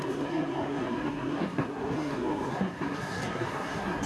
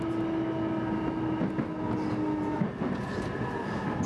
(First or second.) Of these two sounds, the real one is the second